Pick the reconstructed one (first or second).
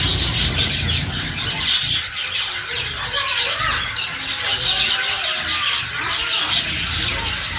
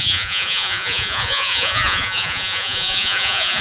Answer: second